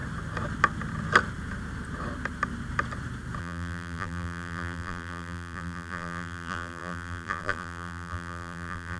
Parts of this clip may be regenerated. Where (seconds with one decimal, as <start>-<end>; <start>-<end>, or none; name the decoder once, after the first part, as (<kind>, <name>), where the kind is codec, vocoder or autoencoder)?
3.4-9.0 (vocoder, BigVGAN v2)